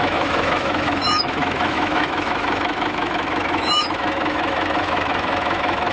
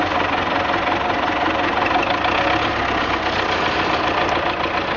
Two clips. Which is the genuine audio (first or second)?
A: second